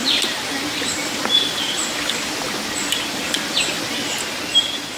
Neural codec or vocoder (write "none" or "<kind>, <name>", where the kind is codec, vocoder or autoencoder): none